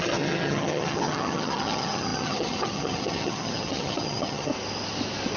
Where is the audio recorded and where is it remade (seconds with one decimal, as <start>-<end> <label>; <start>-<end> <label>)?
0.0-4.5 remade; 4.5-5.4 recorded